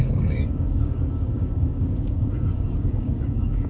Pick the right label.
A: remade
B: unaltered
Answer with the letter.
A